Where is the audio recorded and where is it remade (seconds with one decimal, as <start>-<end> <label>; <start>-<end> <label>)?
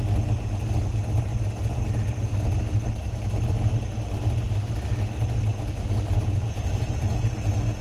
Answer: 0.0-5.5 recorded; 5.5-7.1 remade; 7.1-7.8 recorded